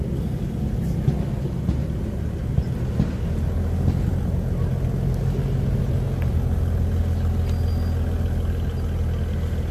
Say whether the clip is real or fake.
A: real